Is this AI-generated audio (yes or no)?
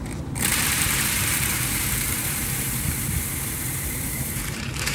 yes